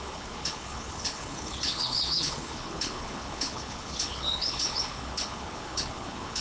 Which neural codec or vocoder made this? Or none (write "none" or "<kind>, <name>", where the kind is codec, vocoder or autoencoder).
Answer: codec, HILCodec